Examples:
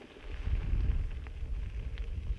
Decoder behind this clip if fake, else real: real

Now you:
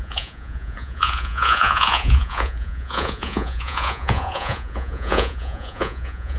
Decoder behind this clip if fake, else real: fake, vocoder, Vocos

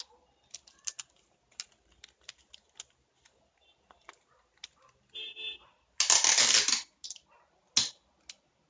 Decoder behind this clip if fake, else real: real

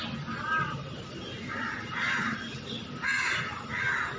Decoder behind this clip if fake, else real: real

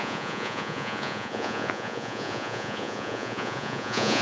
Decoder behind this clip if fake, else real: fake, vocoder, Vocos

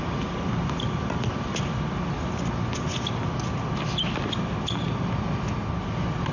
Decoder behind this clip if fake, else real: real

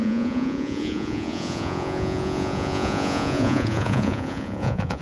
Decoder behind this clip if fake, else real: fake, vocoder, Vocos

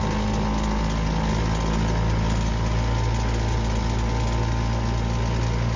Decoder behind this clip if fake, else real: real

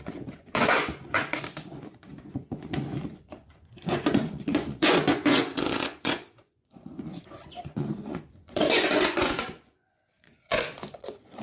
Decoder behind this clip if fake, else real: fake, vocoder, Vocos